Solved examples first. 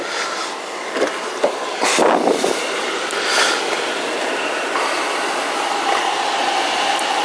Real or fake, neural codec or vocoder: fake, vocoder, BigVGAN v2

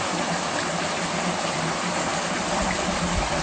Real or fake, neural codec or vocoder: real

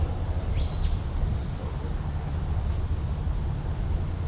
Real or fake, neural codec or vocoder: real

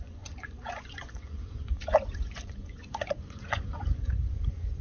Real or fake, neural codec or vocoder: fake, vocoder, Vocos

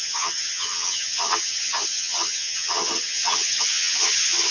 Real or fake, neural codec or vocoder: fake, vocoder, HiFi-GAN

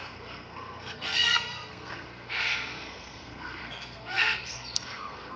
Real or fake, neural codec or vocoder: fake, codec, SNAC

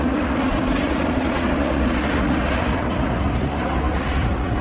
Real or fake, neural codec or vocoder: fake, vocoder, Vocos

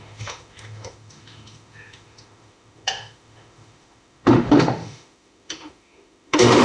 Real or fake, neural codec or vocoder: fake, autoencoder, DAC-VAE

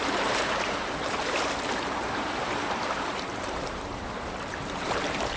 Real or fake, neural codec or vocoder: fake, vocoder, BigVGAN v2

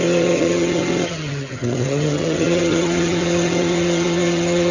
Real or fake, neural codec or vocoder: fake, vocoder, HiFi-GAN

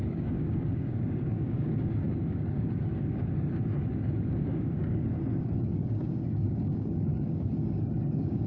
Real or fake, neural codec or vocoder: fake, codec, DAC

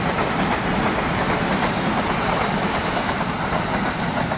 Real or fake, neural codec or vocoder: fake, vocoder, BigVGAN v2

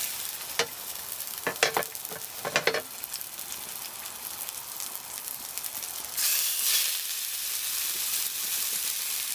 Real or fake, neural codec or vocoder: real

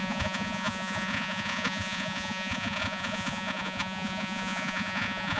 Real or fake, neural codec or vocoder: fake, vocoder, Vocos